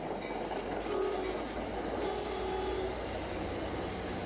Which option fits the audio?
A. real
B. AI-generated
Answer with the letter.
A